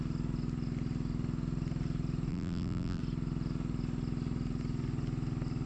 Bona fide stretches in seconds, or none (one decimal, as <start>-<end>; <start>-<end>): 0.0-2.3; 3.0-5.7